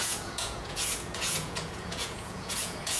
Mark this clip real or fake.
fake